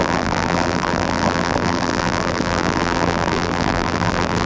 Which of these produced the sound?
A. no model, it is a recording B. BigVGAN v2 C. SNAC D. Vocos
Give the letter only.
B